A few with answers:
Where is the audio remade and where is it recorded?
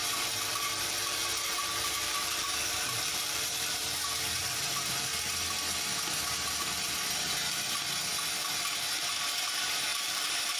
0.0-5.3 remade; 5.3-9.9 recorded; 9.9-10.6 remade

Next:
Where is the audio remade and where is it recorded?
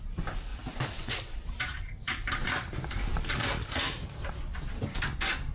0.0-0.5 recorded; 0.5-3.8 remade; 3.8-5.5 recorded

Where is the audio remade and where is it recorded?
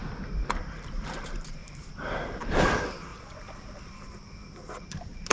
0.0-0.6 recorded; 0.6-1.6 remade; 1.6-2.4 recorded; 2.4-3.1 remade; 3.1-4.7 recorded; 4.7-5.3 remade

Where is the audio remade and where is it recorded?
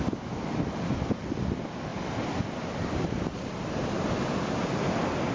0.0-1.9 recorded; 1.9-5.3 remade